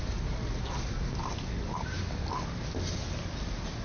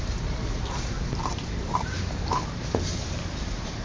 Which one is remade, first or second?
second